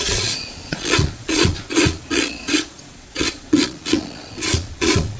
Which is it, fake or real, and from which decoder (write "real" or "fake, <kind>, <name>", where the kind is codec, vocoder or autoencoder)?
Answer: fake, vocoder, Vocos